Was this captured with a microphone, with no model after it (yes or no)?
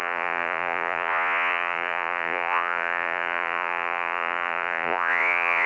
no